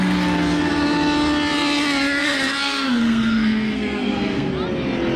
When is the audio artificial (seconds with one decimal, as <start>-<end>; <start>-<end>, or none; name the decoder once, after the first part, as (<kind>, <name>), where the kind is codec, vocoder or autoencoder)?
2.2-4.5 (codec, SNAC)